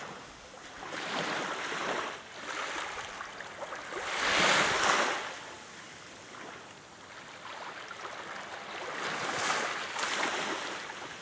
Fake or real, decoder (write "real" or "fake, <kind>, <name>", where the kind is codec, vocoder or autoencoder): real